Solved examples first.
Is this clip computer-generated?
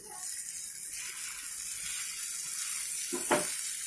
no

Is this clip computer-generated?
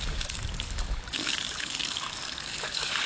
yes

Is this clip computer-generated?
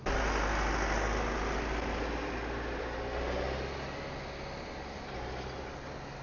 no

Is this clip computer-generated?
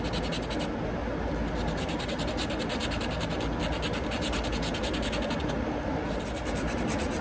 no